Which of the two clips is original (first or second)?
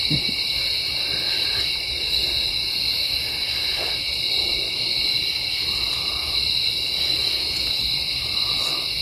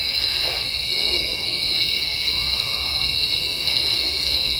first